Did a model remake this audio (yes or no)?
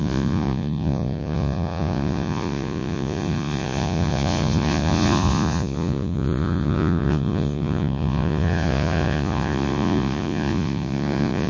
yes